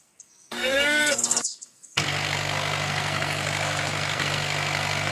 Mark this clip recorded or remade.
remade